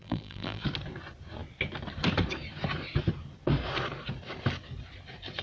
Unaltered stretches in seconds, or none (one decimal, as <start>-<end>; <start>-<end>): 0.6-5.4